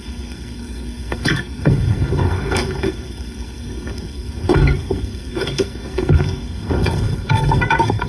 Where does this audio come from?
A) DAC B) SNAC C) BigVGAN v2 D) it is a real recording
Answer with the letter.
B